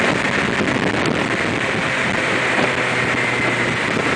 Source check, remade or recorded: recorded